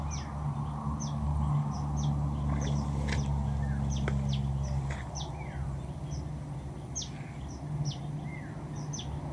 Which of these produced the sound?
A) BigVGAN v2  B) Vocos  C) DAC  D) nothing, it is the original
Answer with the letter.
D